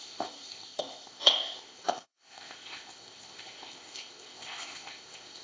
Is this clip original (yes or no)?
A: no